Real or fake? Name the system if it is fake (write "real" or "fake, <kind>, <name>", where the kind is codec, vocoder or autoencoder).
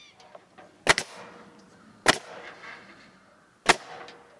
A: real